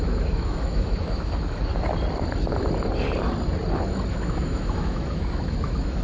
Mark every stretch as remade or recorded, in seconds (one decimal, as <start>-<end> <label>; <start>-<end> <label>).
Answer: 0.0-1.7 remade; 1.7-4.1 recorded; 4.1-6.0 remade